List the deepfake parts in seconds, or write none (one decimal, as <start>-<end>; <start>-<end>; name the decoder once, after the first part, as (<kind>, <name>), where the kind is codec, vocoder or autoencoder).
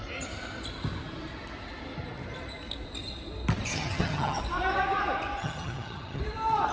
3.7-4.4 (vocoder, HiFi-GAN); 5.4-6.2